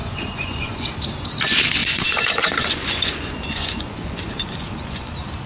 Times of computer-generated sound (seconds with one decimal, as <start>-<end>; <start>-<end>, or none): 0.0-0.9; 1.8-5.1